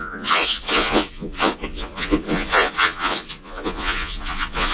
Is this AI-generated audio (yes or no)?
yes